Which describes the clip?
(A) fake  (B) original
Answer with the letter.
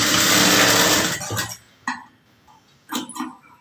B